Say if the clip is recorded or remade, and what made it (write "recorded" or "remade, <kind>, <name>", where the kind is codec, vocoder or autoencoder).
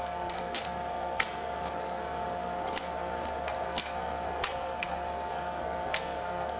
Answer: remade, codec, SNAC